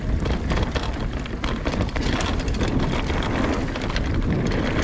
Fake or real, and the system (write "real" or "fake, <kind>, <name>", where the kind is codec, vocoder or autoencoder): real